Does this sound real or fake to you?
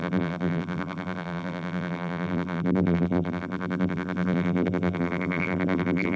fake